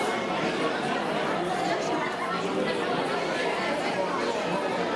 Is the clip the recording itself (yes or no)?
yes